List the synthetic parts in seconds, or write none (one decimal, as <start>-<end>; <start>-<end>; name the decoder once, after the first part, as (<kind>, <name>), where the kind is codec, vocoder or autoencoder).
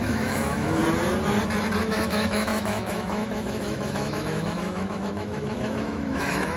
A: 0.0-0.8 (autoencoder, DAC-VAE); 1.8-6.6